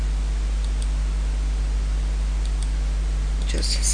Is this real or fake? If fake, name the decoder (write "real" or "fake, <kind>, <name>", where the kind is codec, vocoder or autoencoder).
real